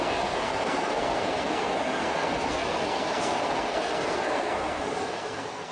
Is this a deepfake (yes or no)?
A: yes